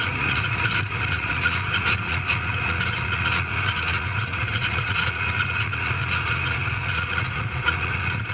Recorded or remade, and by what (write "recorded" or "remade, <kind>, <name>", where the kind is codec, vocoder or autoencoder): remade, vocoder, Vocos